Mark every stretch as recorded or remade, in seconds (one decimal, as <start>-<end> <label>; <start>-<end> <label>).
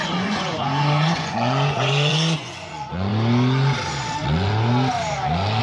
0.0-3.1 remade; 3.1-5.6 recorded